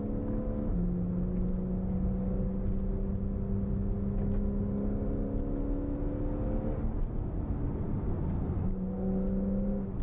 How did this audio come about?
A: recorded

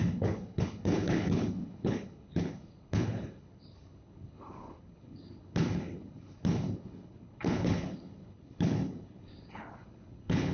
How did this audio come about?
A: remade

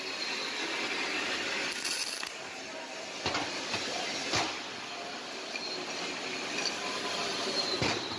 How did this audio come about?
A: recorded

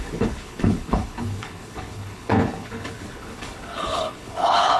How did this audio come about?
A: remade